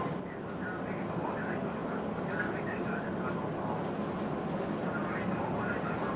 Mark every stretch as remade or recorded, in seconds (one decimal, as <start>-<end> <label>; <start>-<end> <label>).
0.0-6.2 recorded